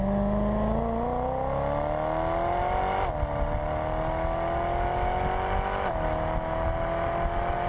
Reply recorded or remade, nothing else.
recorded